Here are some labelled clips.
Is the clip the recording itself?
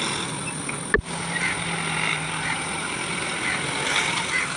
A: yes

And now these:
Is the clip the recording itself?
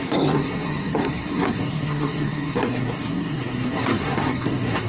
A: no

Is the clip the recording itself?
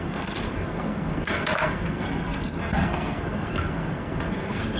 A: no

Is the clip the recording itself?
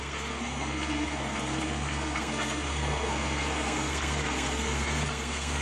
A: no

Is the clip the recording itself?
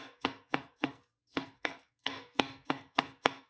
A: no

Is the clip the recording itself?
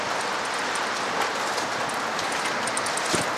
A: yes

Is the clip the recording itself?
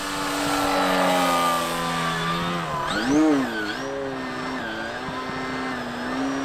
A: yes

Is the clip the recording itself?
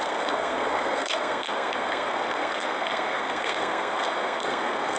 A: no